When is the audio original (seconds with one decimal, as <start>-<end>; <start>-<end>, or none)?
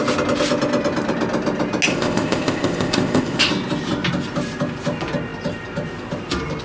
0.0-1.9; 3.5-6.6